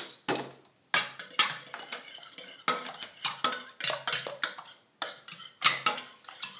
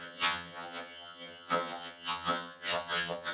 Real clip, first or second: first